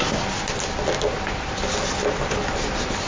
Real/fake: real